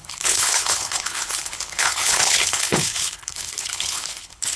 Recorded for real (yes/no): no